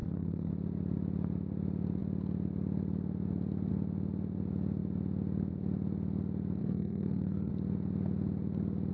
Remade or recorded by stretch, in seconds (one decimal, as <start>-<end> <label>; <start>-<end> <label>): 0.0-0.5 remade; 0.5-6.6 recorded; 6.6-7.5 remade; 7.5-8.9 recorded